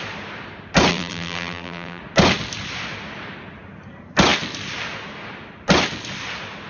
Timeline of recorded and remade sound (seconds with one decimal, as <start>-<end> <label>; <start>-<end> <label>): 0.0-0.9 recorded; 0.9-2.0 remade; 2.0-6.7 recorded